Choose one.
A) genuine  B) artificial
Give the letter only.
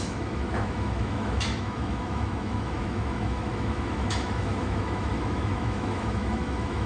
B